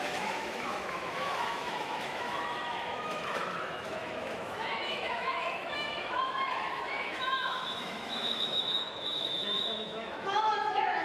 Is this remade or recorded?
remade